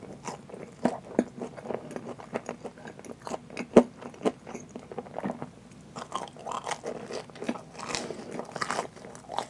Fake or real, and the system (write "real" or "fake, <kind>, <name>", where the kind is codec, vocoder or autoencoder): real